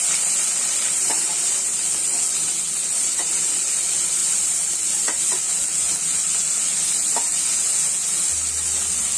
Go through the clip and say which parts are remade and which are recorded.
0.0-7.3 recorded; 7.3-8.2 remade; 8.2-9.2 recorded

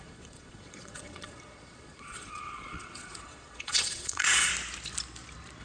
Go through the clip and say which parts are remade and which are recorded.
0.0-4.5 remade; 4.5-5.6 recorded

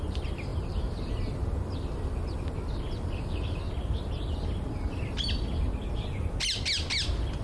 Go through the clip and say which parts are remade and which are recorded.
0.0-7.4 recorded

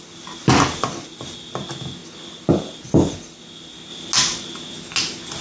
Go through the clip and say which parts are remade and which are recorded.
0.0-5.4 recorded

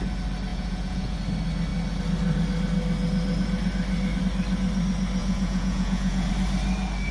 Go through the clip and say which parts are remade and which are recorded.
0.0-0.5 recorded; 0.5-1.1 remade; 1.1-5.2 recorded; 5.2-6.3 remade; 6.3-7.1 recorded

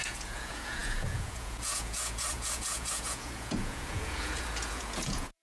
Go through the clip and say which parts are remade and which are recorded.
0.0-5.4 remade

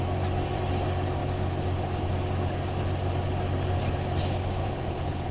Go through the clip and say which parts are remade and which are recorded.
0.0-4.6 recorded; 4.6-5.3 remade

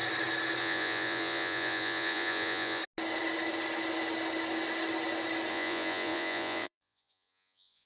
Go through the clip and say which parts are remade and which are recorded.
0.0-0.6 recorded; 0.6-2.8 remade; 2.8-5.5 recorded; 5.5-7.9 remade